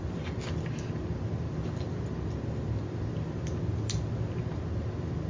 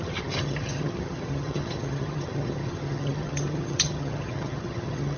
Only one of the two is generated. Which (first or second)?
second